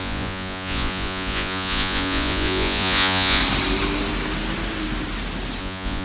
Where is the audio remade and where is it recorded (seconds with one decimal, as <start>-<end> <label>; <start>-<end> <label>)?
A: 0.0-3.4 remade; 3.4-5.6 recorded; 5.6-6.0 remade